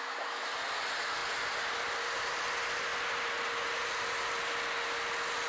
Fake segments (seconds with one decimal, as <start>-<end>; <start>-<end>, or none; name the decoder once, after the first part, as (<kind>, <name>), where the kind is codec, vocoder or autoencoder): none